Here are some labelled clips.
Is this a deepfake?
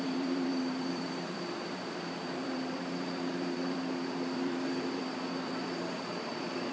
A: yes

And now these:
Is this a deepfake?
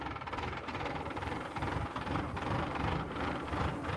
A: yes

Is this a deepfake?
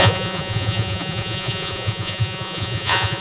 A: yes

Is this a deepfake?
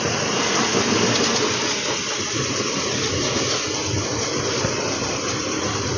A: no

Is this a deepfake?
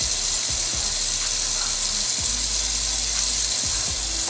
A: no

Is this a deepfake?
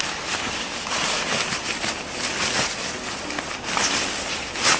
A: no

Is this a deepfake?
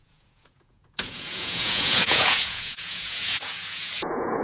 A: yes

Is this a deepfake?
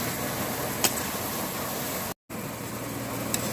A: no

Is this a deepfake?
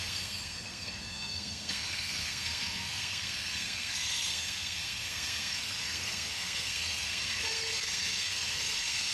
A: yes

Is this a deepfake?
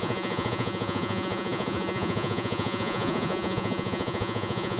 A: yes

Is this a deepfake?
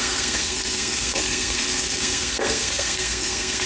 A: yes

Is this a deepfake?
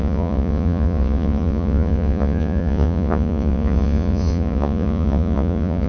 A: yes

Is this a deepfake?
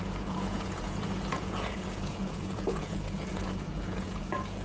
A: yes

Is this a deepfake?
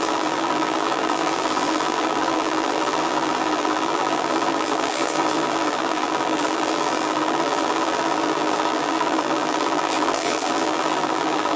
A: yes